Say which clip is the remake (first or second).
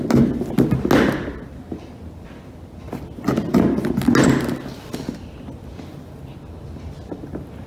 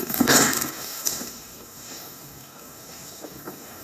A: second